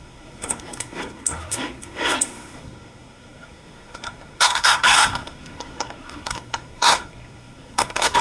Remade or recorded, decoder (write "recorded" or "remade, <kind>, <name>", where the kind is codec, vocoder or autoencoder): remade, codec, SNAC